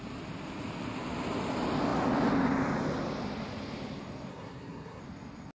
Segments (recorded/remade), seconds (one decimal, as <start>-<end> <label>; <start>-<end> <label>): 0.0-4.3 recorded; 4.3-5.0 remade; 5.0-5.6 recorded